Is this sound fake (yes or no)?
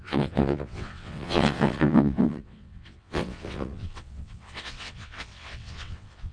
yes